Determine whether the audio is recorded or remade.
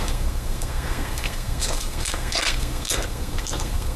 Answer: remade